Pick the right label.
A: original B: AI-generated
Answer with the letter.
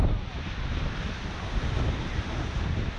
A